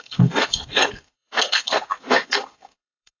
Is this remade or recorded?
remade